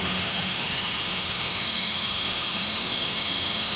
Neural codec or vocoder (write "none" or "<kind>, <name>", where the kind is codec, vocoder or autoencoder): autoencoder, DAC-VAE